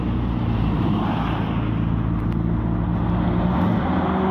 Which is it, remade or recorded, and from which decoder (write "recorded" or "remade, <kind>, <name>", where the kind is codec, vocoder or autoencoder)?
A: recorded